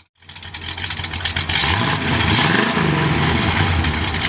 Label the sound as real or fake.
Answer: real